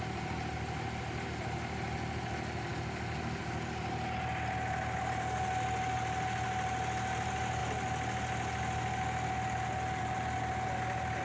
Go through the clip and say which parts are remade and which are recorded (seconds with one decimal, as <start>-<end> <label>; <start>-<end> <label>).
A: 0.0-11.2 recorded